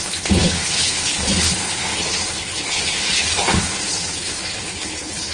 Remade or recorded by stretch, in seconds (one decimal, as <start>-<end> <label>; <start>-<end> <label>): 0.0-5.3 remade